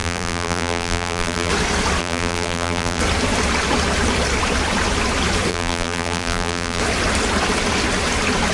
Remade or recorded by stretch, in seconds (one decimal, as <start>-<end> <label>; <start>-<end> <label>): 0.0-1.5 remade; 1.5-2.0 recorded; 2.0-3.0 remade; 3.0-5.5 recorded; 5.5-6.8 remade; 6.8-8.5 recorded